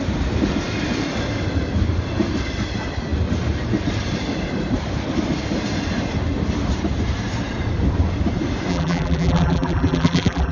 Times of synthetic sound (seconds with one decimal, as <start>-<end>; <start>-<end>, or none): 8.7-10.5